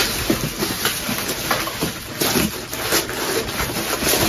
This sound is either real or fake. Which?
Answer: real